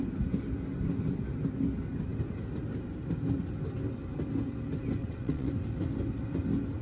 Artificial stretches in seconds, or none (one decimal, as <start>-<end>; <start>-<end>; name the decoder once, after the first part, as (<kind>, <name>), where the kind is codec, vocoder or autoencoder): 5.0-5.5 (vocoder, WaveNeXt)